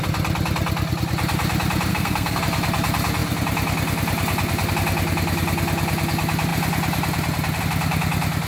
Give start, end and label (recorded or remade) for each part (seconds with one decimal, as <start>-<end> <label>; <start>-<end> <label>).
0.0-1.9 recorded; 1.9-2.4 remade; 2.4-8.5 recorded